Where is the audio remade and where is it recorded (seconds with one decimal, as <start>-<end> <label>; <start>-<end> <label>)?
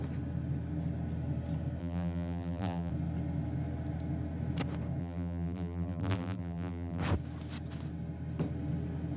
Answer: 0.0-1.8 recorded; 1.8-2.9 remade; 2.9-5.0 recorded; 5.0-7.0 remade; 7.0-9.2 recorded